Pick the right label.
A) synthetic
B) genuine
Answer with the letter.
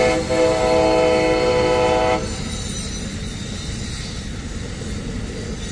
B